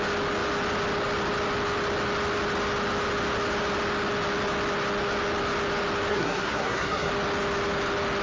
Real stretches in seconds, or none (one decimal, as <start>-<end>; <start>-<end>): 0.0-6.1; 7.1-8.2